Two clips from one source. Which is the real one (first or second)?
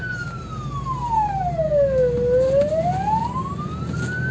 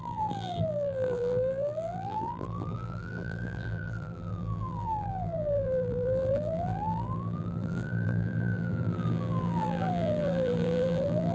first